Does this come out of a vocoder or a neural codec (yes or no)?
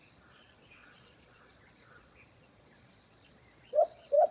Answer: yes